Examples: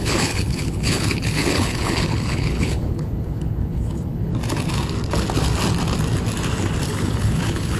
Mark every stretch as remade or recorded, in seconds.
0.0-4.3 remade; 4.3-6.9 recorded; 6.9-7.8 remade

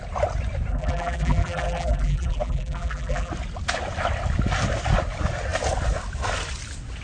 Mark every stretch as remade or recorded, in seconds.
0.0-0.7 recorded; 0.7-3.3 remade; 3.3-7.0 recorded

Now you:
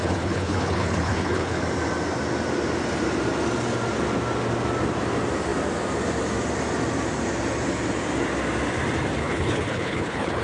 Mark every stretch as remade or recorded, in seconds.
0.0-1.6 remade; 1.6-9.2 recorded; 9.2-10.4 remade

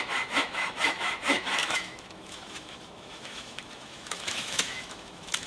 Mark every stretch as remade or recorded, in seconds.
0.0-5.5 remade